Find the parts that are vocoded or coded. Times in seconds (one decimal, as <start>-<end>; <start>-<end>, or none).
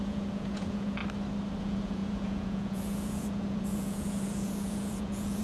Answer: 0.0-1.0; 1.6-5.4